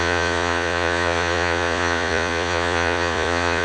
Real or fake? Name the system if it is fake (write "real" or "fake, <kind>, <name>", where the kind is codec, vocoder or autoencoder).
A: fake, vocoder, Vocos